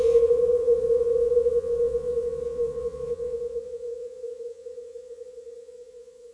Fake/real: fake